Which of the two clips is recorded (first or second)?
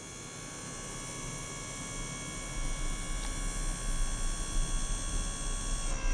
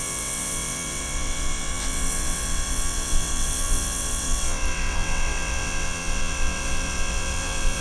first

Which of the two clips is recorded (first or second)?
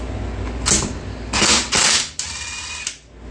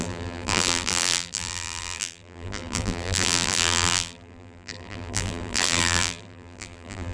first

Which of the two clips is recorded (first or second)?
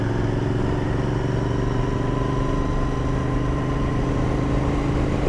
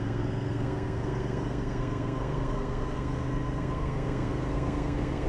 first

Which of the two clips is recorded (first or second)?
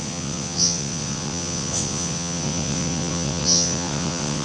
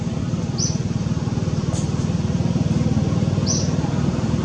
second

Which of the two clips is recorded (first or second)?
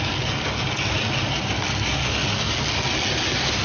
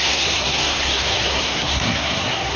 first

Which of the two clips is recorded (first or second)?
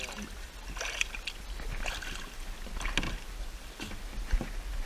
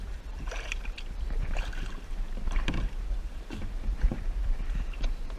first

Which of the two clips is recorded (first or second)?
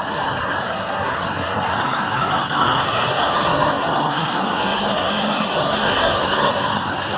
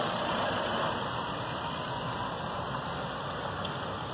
second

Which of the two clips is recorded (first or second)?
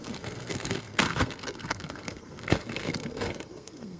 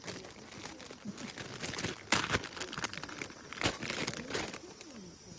second